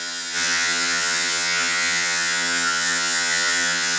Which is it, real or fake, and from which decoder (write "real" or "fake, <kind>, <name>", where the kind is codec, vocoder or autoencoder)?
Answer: fake, vocoder, HiFi-GAN